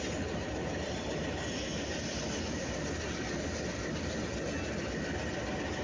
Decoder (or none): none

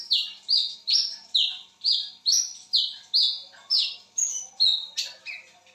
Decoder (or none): none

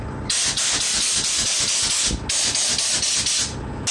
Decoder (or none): none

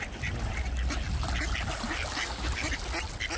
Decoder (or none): none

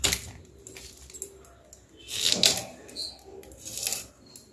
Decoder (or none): none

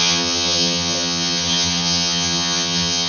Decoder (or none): vocoder, HiFi-GAN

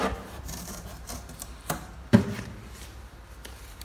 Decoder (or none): vocoder, BigVGAN v2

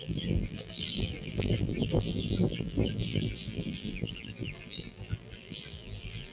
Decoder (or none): vocoder, BigVGAN v2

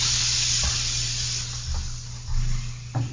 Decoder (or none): none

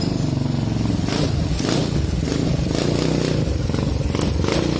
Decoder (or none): vocoder, BigVGAN v2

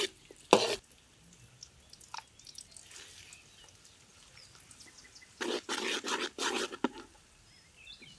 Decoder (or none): none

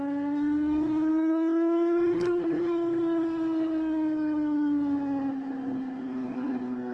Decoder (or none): codec, SNAC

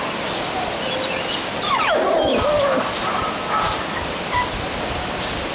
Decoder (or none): none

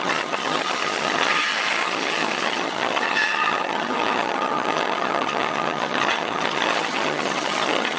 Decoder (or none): vocoder, HiFi-GAN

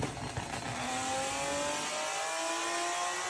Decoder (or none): none